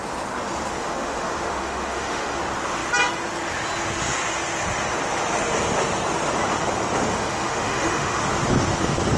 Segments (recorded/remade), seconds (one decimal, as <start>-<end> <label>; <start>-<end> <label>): 0.0-0.8 recorded; 0.8-2.4 remade; 2.4-7.1 recorded; 7.1-8.2 remade; 8.2-9.2 recorded